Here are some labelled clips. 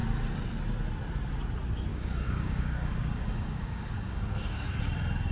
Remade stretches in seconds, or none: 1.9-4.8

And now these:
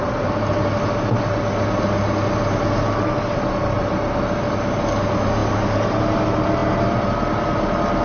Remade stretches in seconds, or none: none

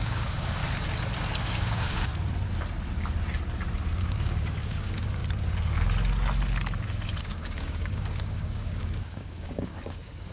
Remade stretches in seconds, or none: 0.0-0.6; 1.4-2.1; 4.0-5.2; 7.2-10.3